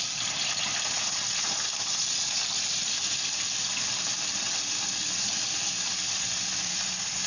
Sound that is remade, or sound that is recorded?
recorded